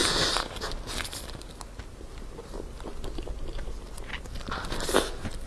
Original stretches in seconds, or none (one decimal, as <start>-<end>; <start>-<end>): 2.8-5.5